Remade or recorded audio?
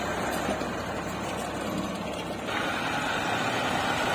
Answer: recorded